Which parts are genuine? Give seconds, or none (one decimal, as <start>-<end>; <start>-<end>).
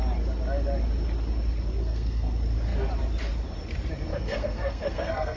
0.0-1.8; 2.3-4.1